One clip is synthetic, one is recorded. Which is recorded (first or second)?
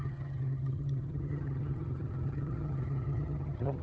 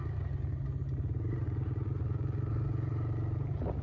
second